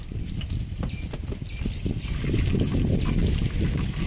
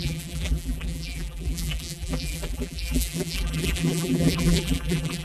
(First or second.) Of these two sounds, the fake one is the second